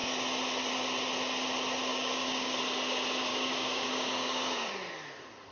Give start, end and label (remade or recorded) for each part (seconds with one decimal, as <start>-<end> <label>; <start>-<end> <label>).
0.0-1.9 recorded; 1.9-2.6 remade; 2.6-3.3 recorded; 3.3-4.7 remade; 4.7-5.5 recorded